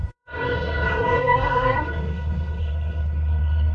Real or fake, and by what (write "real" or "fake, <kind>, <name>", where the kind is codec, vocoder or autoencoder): fake, codec, SNAC